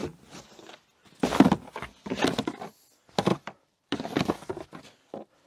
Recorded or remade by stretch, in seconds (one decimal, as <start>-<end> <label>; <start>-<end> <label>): 0.0-1.9 remade; 1.9-3.3 recorded; 3.3-4.5 remade; 4.5-5.5 recorded